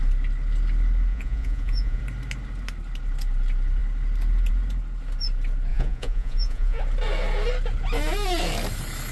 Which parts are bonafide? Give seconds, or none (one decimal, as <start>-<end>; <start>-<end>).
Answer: 0.0-1.1; 2.0-5.7; 6.8-9.1